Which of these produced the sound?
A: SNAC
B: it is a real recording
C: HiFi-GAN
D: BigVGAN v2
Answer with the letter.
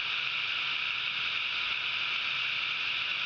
B